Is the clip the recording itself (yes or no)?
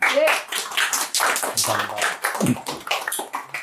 yes